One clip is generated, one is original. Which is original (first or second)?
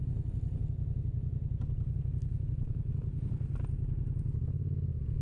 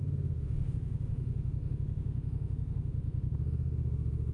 first